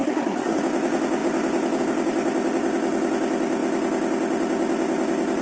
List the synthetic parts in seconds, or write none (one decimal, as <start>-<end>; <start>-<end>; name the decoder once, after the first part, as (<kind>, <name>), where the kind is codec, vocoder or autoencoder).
0.0-0.6 (codec, SNAC)